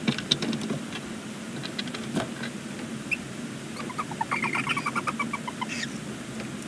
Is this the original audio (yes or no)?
yes